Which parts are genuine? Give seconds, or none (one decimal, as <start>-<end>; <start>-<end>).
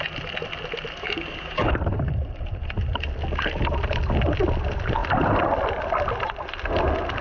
0.0-1.0; 1.7-7.2